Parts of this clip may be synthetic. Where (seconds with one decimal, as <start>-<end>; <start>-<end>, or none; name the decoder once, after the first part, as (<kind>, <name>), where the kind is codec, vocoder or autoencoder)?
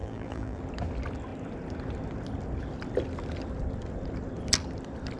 0.0-0.6 (vocoder, BigVGAN v2)